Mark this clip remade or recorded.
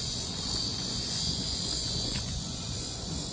remade